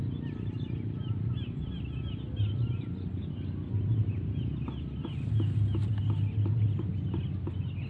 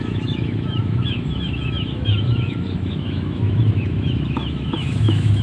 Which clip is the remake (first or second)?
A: second